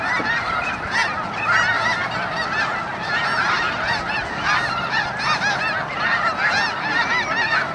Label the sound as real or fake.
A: real